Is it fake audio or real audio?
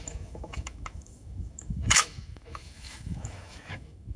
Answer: fake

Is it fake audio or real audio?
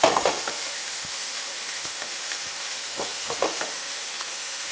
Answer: fake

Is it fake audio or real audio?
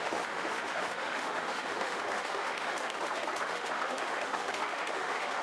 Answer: fake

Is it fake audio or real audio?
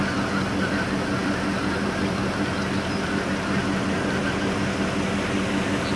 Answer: real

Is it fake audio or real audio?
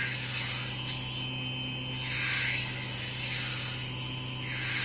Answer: real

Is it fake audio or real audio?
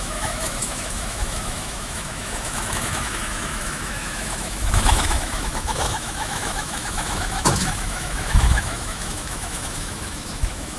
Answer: fake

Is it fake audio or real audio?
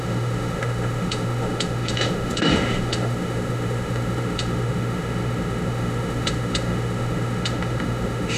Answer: fake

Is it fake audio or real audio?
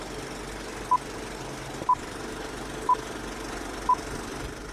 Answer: real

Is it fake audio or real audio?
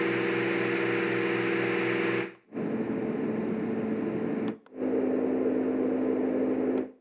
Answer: real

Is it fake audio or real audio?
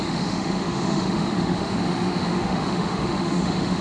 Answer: fake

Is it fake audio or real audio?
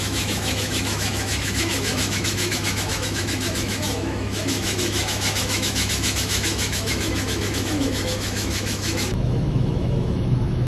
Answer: fake